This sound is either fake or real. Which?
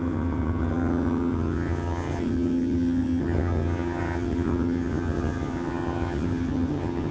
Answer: fake